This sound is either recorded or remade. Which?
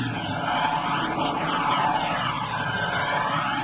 recorded